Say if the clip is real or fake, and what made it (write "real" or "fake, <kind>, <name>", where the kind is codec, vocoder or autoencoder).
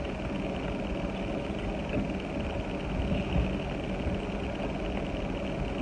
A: real